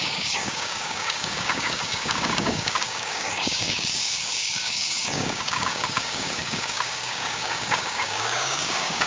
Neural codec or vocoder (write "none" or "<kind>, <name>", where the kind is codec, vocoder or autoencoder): codec, DAC